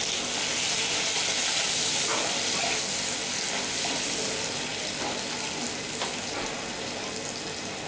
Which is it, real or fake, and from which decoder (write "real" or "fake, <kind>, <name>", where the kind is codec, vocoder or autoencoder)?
real